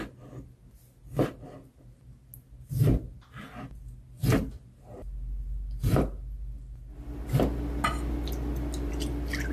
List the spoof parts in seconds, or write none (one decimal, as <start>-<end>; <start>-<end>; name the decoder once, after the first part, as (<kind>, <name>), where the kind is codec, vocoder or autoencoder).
none